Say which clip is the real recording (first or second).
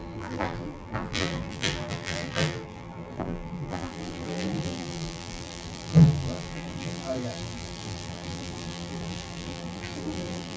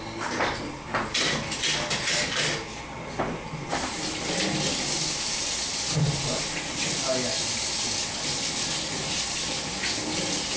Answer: second